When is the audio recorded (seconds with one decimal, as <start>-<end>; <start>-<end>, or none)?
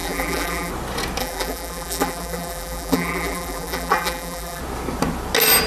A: 0.7-1.2; 4.6-5.7